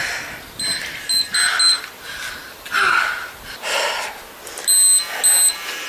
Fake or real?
real